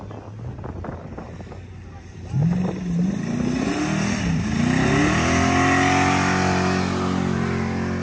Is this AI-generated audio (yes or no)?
no